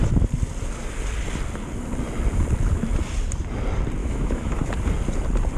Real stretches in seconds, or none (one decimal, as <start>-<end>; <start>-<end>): 0.0-4.0; 4.7-5.6